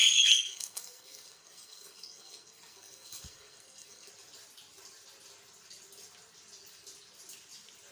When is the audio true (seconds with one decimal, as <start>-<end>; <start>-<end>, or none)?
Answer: 4.1-7.9